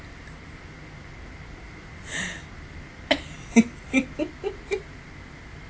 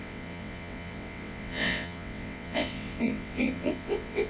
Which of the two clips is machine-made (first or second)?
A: second